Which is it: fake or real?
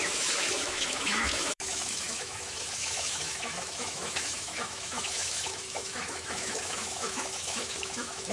fake